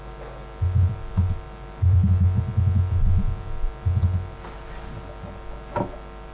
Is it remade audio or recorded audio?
recorded